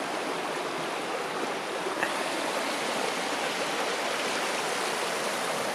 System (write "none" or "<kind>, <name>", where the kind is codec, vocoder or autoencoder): vocoder, BigVGAN v2